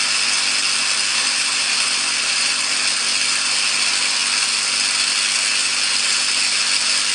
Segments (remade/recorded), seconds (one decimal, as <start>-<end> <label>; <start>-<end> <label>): 0.0-1.1 recorded; 1.1-2.6 remade; 2.6-7.1 recorded